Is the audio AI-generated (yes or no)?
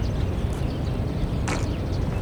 no